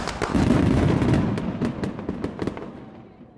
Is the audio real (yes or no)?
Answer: yes